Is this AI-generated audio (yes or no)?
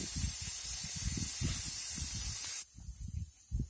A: no